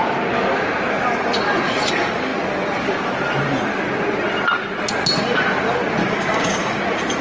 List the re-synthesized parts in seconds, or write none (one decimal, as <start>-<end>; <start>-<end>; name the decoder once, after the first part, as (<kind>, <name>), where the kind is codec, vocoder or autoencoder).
6.0-6.8 (codec, DAC)